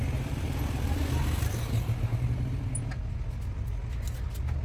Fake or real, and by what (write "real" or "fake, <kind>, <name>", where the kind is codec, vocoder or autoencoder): real